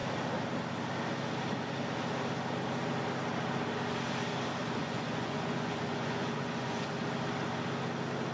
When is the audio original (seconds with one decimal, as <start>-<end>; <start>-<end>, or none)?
0.0-4.6; 6.9-8.3